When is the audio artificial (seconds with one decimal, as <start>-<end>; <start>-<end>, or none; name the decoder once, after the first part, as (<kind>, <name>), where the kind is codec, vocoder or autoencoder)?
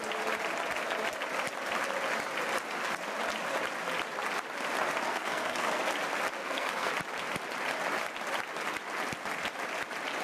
5.1-5.8 (codec, SNAC); 6.4-6.9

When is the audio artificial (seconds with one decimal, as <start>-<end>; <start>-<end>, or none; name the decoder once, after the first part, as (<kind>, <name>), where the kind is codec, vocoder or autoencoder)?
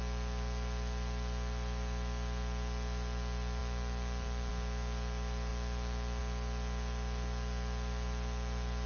none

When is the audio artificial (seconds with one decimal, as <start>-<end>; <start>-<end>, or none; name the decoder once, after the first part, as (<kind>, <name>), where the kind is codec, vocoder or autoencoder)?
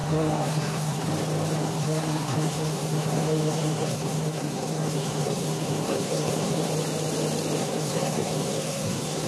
0.0-1.1 (codec, SNAC); 1.6-6.7; 7.6-9.3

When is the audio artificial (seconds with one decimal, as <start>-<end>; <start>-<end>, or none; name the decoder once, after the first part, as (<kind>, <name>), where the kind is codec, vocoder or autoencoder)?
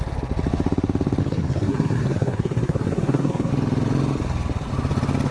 1.2-3.5 (codec, SNAC)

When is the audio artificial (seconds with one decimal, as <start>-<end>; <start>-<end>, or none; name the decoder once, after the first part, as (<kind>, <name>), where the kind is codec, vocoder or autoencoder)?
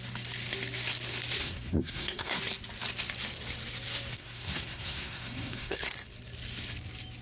1.4-2.4 (codec, SNAC); 4.1-5.9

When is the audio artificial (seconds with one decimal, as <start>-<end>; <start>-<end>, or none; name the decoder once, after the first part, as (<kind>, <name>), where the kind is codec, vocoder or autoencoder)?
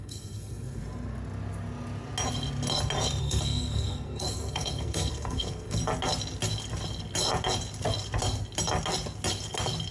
0.0-0.8 (codec, SNAC); 3.2-5.8